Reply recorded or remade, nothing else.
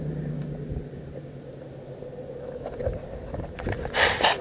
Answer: recorded